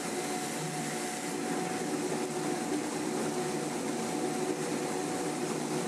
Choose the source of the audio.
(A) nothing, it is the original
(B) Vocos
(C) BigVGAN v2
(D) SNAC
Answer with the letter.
A